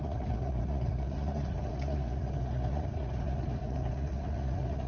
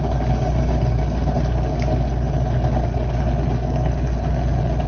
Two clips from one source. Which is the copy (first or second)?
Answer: first